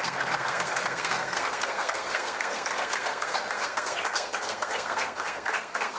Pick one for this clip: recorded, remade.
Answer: remade